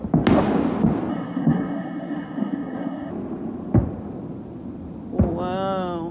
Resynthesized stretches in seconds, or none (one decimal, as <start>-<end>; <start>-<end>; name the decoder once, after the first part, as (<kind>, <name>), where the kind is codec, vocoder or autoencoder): 1.1-3.1 (codec, SNAC)